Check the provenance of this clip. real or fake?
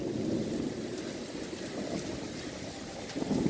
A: real